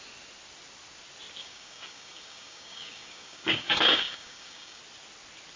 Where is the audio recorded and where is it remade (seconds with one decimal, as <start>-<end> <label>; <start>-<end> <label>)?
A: 0.0-1.4 recorded; 1.4-4.8 remade; 4.8-5.6 recorded